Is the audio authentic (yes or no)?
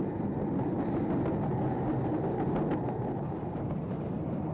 yes